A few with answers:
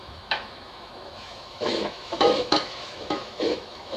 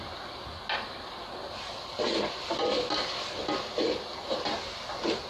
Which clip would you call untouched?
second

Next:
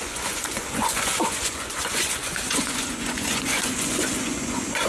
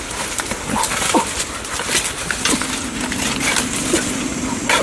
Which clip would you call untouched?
second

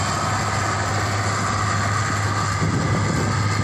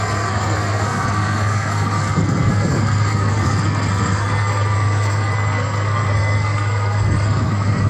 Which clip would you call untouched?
first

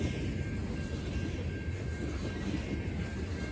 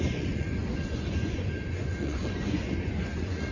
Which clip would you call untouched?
first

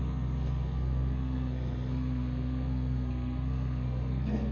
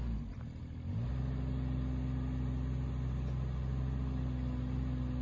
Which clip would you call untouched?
second